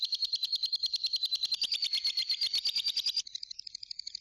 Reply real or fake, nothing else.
real